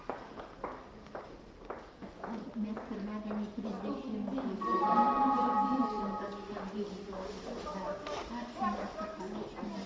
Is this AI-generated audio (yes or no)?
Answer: no